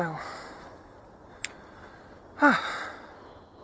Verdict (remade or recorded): recorded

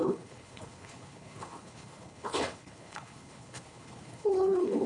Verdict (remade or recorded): remade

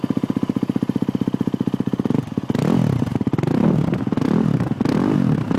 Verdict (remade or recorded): recorded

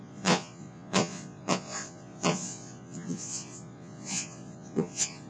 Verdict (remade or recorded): remade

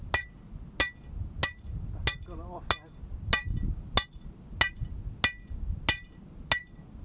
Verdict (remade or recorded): recorded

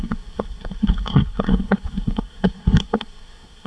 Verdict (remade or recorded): remade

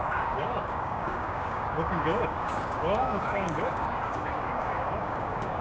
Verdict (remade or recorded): remade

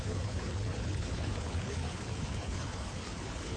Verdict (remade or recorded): remade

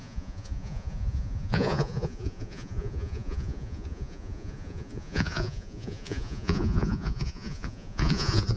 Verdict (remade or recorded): remade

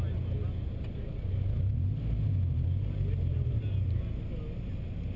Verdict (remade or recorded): recorded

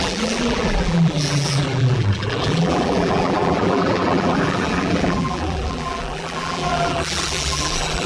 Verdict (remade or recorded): remade